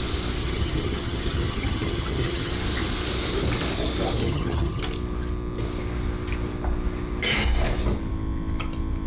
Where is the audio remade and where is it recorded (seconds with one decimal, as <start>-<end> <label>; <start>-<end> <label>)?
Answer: 0.0-0.4 recorded; 0.4-2.5 remade; 2.5-4.2 recorded; 4.2-4.8 remade; 4.8-9.1 recorded